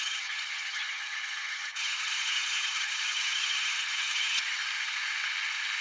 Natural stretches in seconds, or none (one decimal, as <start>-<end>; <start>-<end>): 4.6-5.8